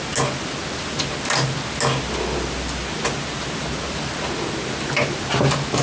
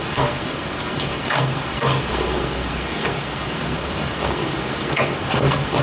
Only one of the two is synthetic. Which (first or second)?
second